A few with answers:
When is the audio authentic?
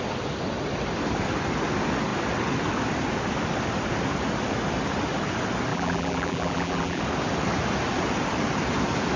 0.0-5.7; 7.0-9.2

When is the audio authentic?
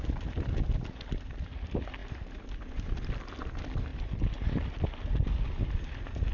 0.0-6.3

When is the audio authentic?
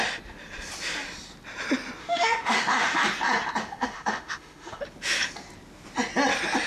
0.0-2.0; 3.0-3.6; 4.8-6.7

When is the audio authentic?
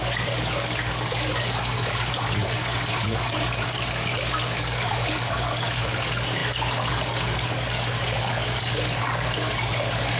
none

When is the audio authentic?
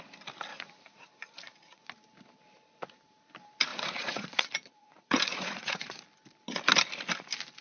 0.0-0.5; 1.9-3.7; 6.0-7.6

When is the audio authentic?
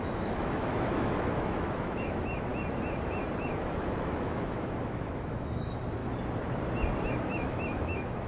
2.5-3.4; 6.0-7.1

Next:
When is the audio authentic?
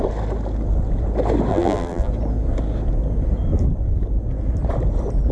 0.0-1.5; 2.1-5.3